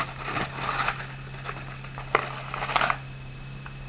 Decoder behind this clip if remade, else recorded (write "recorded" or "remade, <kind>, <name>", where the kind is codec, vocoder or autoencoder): recorded